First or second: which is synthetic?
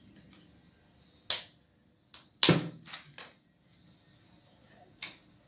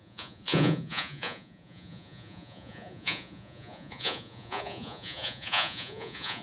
second